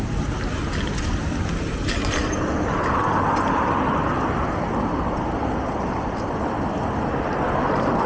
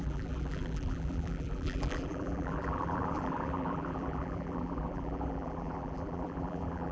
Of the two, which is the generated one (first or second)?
second